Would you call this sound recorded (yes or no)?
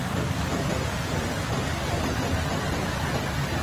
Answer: yes